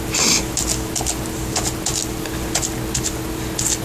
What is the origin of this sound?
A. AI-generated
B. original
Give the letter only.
B